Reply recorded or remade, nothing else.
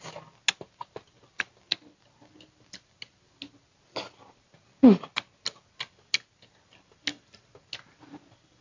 recorded